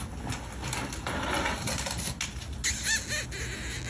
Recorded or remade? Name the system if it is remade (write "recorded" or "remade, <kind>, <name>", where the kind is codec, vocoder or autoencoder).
recorded